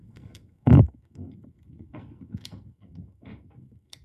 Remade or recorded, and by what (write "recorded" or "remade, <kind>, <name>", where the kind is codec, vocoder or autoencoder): remade, codec, SNAC